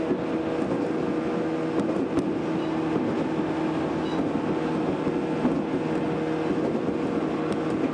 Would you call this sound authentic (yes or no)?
yes